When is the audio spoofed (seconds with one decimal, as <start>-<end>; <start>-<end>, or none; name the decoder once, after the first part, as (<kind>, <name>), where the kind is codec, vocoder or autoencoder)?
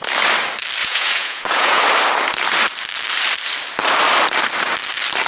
0.8-1.8 (vocoder, Vocos)